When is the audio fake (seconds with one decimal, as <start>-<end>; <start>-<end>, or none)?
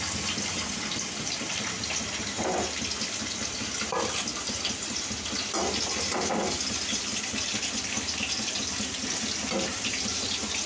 4.3-5.1